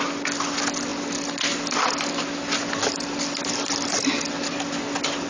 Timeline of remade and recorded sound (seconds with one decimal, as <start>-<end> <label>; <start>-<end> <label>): 0.0-5.3 recorded